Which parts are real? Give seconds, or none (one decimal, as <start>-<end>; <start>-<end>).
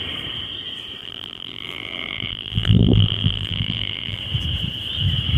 0.0-1.0; 4.2-5.4